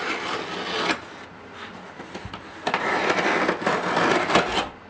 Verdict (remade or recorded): recorded